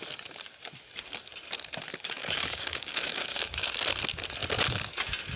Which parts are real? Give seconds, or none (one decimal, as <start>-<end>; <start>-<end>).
0.0-2.2; 3.7-5.4

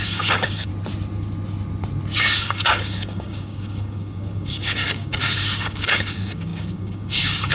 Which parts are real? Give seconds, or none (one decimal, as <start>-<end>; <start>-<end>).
0.7-2.2